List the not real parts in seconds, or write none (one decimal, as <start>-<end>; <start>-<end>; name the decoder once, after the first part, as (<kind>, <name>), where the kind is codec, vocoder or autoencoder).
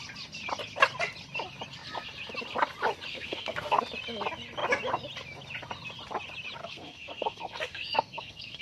3.1-3.8 (codec, SNAC); 6.6-8.6